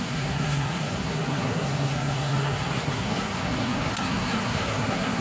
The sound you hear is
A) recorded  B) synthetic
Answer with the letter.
B